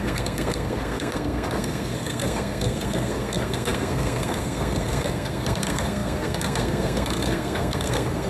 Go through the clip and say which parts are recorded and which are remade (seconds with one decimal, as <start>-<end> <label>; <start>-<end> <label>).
0.0-8.3 remade